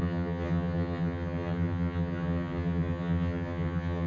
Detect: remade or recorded remade